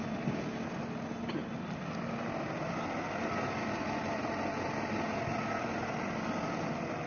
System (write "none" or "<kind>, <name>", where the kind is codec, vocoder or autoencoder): none